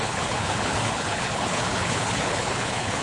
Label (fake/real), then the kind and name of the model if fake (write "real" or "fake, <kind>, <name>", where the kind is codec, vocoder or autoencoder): fake, codec, HILCodec